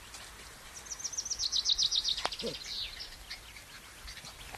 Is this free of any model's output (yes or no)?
yes